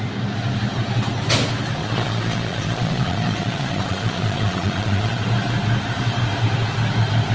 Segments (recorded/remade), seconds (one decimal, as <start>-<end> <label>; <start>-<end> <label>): 0.0-1.8 recorded; 1.8-5.2 remade; 5.2-7.3 recorded